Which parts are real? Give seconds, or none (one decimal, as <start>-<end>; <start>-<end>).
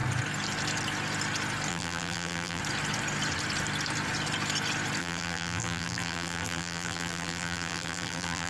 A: 0.0-1.7; 2.6-5.0